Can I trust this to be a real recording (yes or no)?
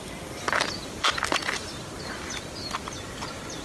yes